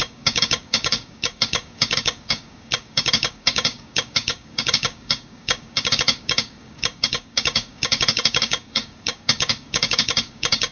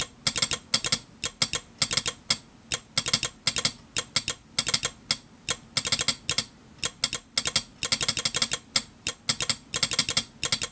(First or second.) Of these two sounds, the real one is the second